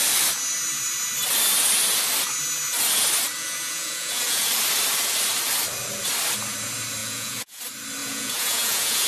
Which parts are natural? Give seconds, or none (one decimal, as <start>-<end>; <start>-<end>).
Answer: 0.0-3.4; 4.5-7.0; 7.6-8.0